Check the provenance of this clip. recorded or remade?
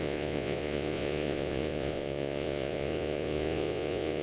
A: remade